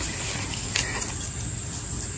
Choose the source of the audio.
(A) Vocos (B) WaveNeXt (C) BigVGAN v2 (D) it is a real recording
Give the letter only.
D